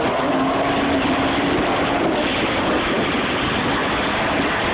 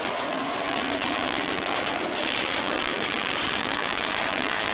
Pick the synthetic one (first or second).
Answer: second